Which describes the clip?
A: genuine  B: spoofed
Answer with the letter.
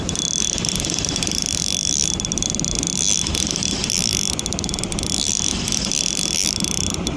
A